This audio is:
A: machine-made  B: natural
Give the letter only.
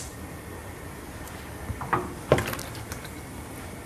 B